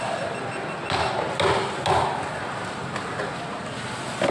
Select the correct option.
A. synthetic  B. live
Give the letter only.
B